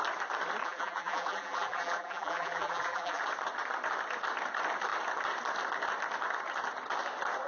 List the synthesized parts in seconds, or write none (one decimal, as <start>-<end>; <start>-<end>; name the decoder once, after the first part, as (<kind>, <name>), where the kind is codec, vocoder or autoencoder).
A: 0.6-3.2 (vocoder, BigVGAN v2)